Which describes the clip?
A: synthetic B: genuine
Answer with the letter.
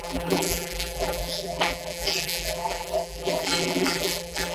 A